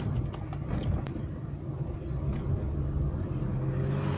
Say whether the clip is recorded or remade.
recorded